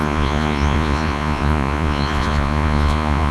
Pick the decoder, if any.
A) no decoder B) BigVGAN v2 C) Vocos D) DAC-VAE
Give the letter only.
C